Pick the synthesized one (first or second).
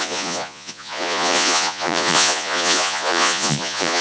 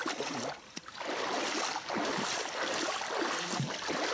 first